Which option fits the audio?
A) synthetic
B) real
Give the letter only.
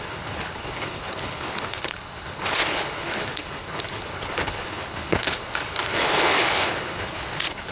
A